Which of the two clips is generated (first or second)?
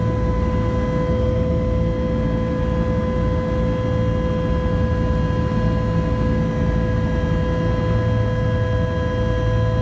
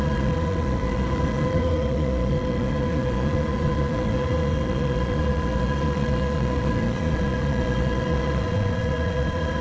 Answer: second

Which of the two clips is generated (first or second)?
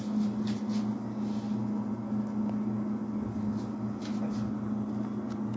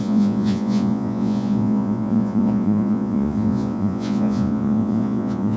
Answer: second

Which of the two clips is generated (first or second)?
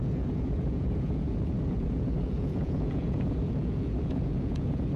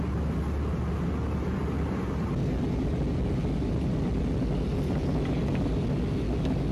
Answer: first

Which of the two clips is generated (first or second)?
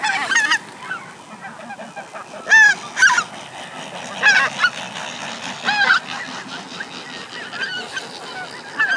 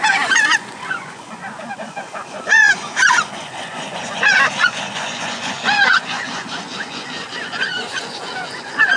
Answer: second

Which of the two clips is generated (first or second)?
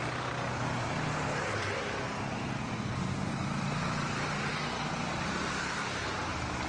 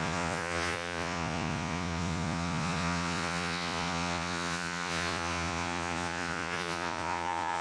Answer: second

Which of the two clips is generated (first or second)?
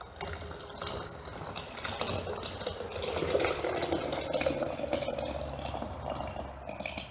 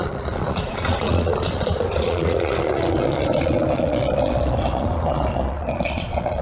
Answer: second